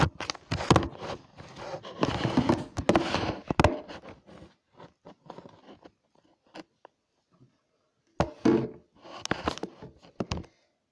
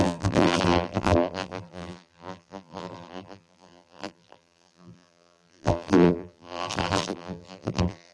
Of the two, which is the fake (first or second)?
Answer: second